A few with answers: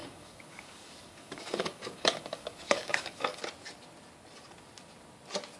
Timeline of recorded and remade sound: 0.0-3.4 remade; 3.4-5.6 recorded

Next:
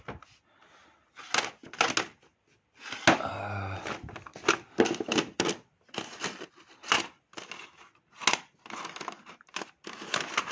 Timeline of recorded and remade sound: 0.0-10.5 recorded

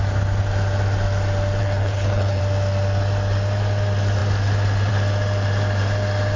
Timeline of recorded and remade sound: 0.0-1.6 recorded; 1.6-2.4 remade; 2.4-6.4 recorded

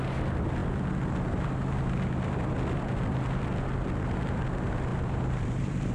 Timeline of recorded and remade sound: 0.0-4.9 recorded; 4.9-5.9 remade

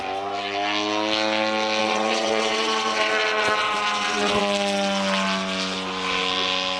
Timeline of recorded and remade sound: 0.0-1.8 recorded; 1.8-4.4 remade; 4.4-6.8 recorded